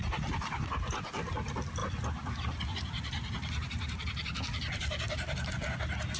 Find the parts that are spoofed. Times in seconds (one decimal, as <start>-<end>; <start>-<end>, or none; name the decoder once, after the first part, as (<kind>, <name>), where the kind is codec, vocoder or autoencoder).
1.8-5.5 (vocoder, BigVGAN v2)